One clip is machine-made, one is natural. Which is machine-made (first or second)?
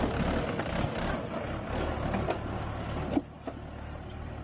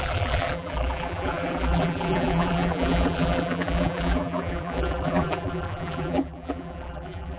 second